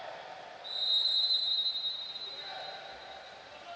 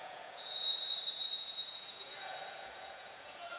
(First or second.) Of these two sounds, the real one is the first